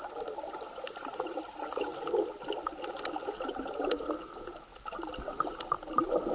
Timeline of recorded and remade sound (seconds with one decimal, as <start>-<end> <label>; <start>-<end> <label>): 0.0-6.3 recorded